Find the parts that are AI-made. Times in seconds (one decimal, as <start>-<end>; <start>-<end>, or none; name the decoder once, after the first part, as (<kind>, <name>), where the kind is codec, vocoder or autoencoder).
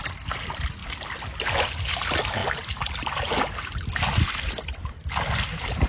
none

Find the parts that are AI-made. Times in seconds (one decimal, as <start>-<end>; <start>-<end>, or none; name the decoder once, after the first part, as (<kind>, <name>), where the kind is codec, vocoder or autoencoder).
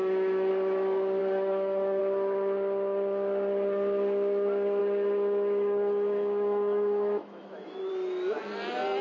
0.0-0.5 (autoencoder, DAC-VAE); 1.2-2.0; 4.8-7.9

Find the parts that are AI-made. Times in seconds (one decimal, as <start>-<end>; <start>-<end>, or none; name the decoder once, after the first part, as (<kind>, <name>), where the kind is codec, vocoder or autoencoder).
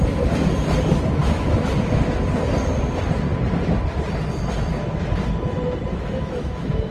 1.2-1.7 (autoencoder, DAC-VAE); 5.9-6.9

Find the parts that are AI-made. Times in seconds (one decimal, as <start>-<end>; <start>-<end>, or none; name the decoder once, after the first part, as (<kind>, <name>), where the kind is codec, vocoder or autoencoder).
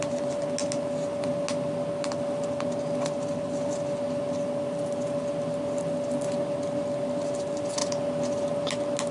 none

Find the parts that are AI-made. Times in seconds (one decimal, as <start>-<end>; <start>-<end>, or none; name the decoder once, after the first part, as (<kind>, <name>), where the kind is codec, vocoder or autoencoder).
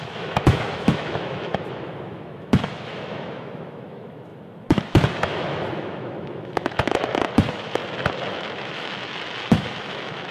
0.0-7.8 (autoencoder, DAC-VAE); 8.3-10.3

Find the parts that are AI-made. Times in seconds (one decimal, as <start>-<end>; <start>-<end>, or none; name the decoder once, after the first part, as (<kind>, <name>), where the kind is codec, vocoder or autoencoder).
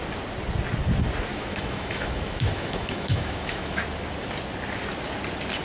1.3-3.8 (autoencoder, DAC-VAE)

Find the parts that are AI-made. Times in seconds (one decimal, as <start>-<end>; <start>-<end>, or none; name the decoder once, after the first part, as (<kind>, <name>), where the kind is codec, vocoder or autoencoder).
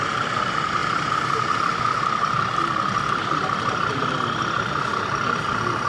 none